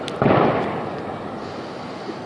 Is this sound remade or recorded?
recorded